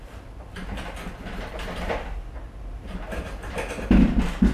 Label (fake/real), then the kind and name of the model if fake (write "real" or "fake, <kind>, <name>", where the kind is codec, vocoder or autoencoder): real